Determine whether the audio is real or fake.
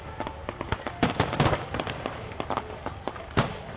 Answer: real